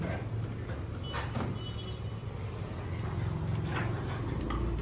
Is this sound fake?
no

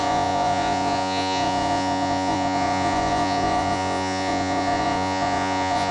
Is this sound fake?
yes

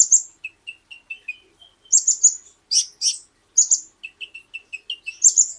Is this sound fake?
no